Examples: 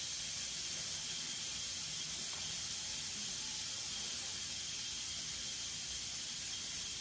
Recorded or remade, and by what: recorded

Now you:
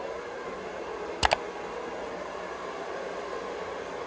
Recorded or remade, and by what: recorded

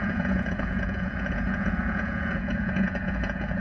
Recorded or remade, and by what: remade, vocoder, Vocos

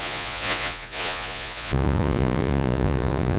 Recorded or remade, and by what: remade, vocoder, Vocos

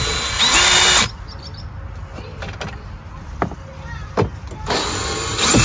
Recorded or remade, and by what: recorded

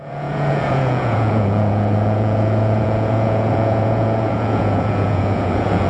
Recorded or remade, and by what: remade, vocoder, Vocos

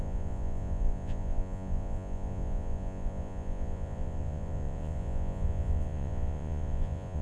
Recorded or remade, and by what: remade, vocoder, Vocos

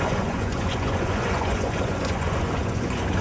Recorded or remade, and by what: remade, vocoder, Vocos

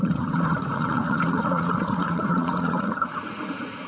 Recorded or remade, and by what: remade, vocoder, Vocos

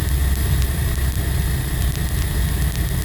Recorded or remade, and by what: recorded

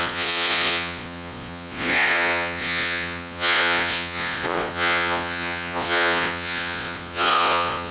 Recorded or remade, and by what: remade, vocoder, Vocos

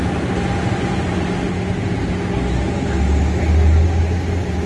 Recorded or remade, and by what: recorded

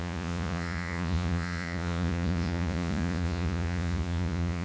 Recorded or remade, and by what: remade, vocoder, Vocos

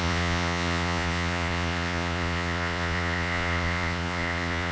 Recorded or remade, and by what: remade, vocoder, Vocos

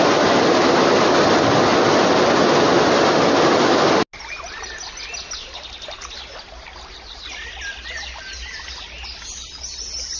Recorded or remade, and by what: recorded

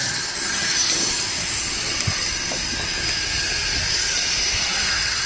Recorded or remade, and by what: recorded